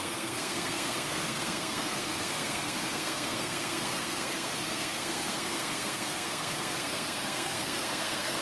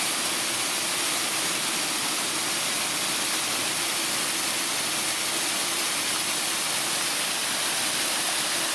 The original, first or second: second